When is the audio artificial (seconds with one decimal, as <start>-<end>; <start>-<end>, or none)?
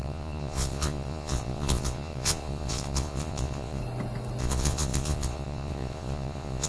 0.0-3.8; 4.4-6.7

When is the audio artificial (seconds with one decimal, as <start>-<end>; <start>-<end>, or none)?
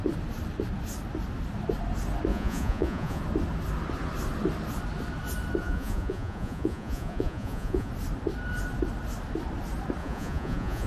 2.3-3.2; 5.6-7.9; 10.0-10.9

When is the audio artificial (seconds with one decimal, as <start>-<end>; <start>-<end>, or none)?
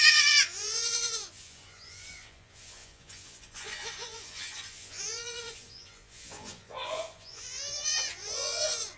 0.0-9.0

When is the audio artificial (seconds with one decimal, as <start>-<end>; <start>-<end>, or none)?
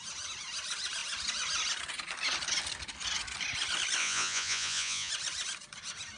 4.0-5.1